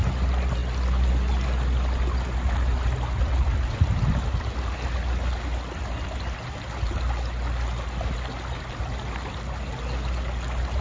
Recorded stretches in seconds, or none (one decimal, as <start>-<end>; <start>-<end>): 0.0-10.8